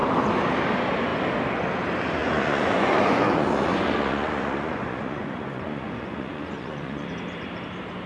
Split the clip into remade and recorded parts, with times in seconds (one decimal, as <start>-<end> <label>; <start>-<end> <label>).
0.0-2.2 recorded; 2.2-7.1 remade; 7.1-8.1 recorded